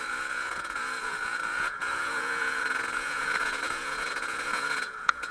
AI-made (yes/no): yes